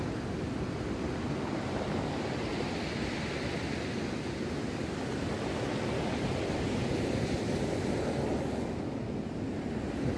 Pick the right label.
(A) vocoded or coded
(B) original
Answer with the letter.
B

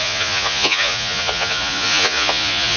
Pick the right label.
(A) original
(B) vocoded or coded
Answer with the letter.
B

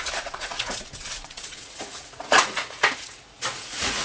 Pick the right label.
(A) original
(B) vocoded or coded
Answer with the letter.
B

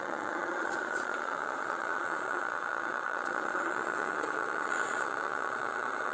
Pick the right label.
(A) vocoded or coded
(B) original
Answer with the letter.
A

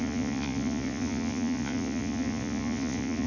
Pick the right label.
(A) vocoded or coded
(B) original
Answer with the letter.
A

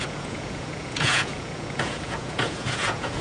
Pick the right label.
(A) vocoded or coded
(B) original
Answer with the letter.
A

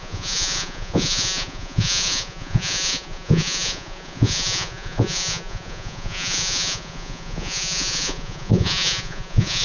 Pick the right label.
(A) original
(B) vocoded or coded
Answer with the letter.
B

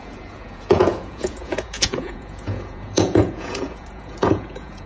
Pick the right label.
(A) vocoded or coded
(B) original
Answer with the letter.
A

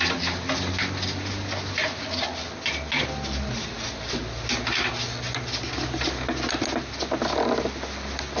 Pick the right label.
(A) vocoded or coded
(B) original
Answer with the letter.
B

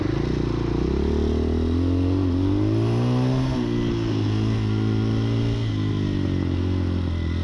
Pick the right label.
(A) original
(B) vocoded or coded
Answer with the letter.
A